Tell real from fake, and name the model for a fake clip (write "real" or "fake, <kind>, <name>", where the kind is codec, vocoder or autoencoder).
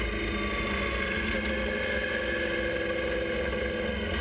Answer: real